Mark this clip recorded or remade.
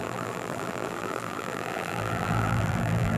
remade